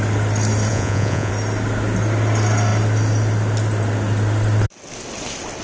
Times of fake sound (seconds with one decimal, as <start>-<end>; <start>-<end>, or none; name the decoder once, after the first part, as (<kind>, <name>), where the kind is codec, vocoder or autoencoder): 0.7-1.3 (vocoder, Vocos)